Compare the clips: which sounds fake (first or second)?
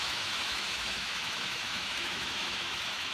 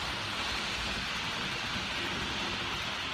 first